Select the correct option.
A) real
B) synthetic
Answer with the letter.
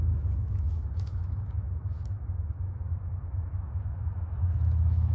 B